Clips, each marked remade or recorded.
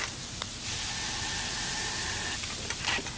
recorded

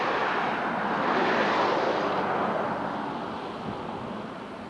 recorded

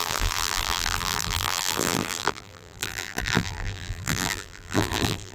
remade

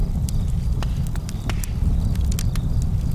recorded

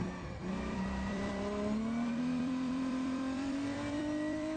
remade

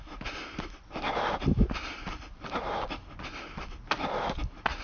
recorded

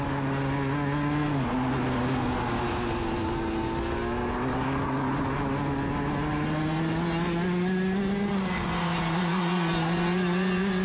recorded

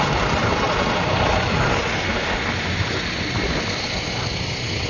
recorded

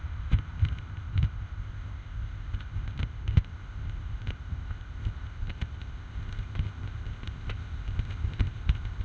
remade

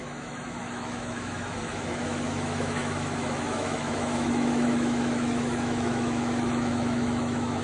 remade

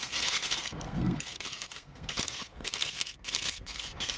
remade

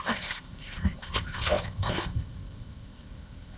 remade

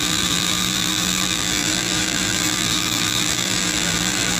remade